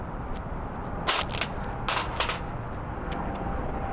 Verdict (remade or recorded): recorded